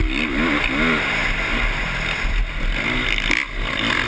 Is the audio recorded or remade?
recorded